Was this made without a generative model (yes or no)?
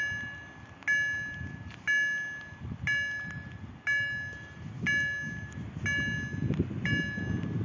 yes